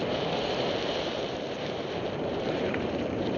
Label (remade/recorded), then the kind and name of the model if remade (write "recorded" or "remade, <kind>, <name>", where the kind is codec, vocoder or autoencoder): remade, vocoder, BigVGAN v2